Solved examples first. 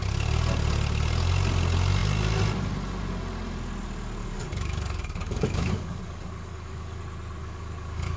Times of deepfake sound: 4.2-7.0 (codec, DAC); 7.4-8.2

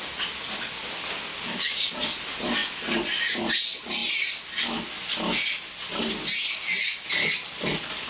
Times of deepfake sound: 1.3-1.9 (codec, DAC)

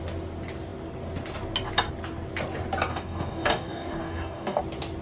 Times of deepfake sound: 2.9-4.6 (codec, DAC)

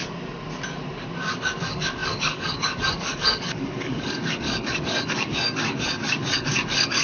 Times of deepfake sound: 1.2-7.0 (codec, DAC)

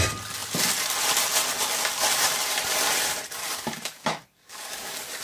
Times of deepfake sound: 3.4-5.2 (codec, DAC)

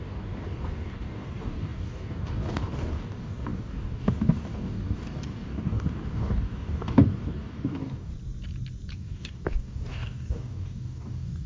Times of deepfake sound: 0.0-8.1 (codec, DAC); 8.9-11.5